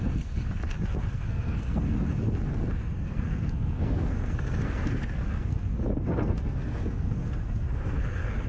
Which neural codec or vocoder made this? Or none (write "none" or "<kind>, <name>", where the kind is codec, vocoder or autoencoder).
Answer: codec, SNAC